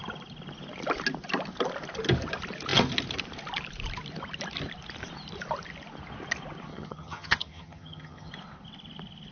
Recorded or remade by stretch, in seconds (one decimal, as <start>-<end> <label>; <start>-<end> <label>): 0.0-6.7 recorded; 6.7-8.3 remade; 8.3-9.3 recorded